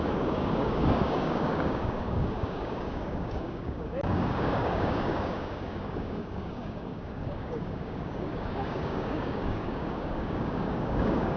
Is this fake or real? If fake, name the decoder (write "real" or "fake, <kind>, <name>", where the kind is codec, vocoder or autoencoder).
fake, codec, DAC